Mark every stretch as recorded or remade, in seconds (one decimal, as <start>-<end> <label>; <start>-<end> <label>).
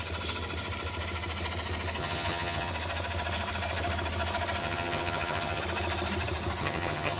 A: 0.0-2.0 recorded; 2.0-2.7 remade; 2.7-4.6 recorded; 4.6-5.6 remade; 5.6-6.6 recorded; 6.6-7.2 remade